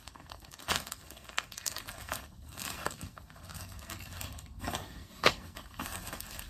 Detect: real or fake fake